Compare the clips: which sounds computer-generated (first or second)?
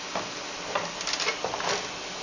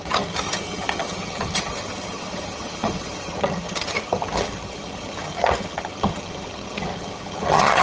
second